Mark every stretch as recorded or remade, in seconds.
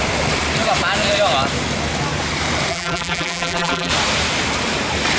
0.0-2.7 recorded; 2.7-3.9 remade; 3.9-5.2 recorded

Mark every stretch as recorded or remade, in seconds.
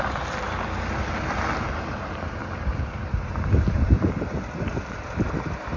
0.0-2.4 recorded; 2.4-3.5 remade; 3.5-5.8 recorded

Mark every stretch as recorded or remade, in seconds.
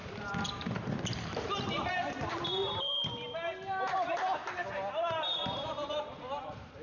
0.0-4.4 remade; 4.4-5.3 recorded; 5.3-6.8 remade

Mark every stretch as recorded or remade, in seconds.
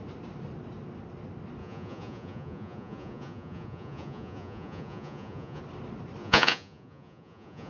0.0-1.6 recorded; 1.6-5.6 remade; 5.6-6.2 recorded; 6.2-7.7 remade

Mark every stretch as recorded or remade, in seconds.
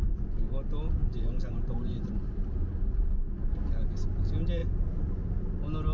0.0-1.0 recorded; 1.0-2.8 remade; 2.8-4.6 recorded; 4.6-5.4 remade; 5.4-5.9 recorded